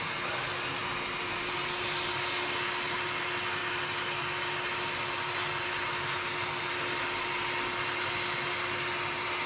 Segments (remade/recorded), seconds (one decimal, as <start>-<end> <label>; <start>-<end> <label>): 0.0-9.5 recorded